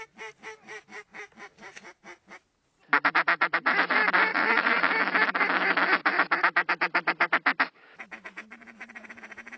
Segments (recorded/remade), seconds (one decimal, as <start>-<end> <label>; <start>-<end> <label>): 0.0-4.3 recorded; 4.3-4.9 remade; 4.9-9.6 recorded